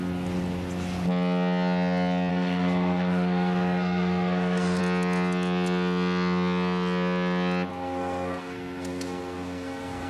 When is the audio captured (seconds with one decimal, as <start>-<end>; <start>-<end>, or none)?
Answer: 0.0-2.3; 4.8-7.7

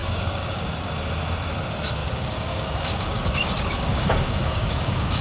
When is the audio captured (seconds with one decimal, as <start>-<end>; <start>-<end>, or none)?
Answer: 0.6-2.0